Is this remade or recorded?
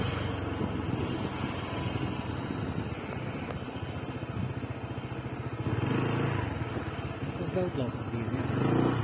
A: recorded